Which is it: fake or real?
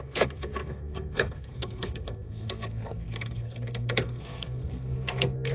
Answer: fake